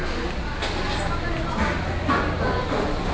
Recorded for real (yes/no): yes